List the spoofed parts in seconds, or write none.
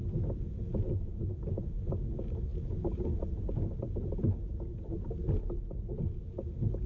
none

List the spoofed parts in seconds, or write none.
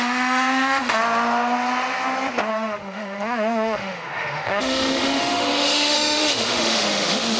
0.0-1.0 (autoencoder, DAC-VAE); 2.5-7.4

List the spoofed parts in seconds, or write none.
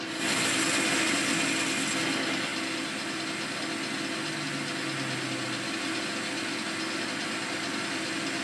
none